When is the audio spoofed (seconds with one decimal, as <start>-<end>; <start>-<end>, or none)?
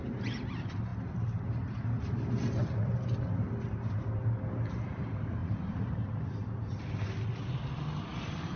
5.4-6.8; 8.1-8.6